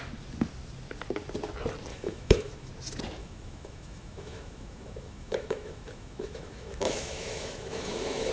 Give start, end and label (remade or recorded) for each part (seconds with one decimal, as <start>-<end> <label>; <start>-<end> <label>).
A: 0.0-1.9 recorded; 1.9-2.7 remade; 2.7-3.2 recorded; 3.2-8.3 remade